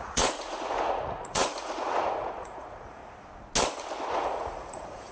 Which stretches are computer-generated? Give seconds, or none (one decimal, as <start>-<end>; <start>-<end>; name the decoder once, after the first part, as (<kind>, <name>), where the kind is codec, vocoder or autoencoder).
0.0-3.0 (vocoder, Vocos); 4.1-5.1